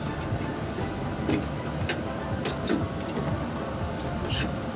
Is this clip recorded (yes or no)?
yes